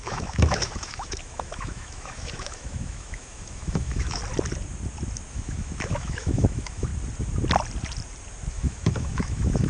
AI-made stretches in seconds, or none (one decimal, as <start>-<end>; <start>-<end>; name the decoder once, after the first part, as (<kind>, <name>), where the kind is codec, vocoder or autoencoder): 0.0-4.2 (autoencoder, DAC-VAE); 5.3-6.9; 8.5-9.7